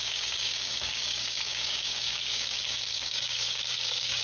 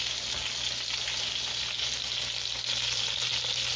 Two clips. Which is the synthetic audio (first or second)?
first